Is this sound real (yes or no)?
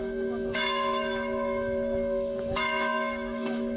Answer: no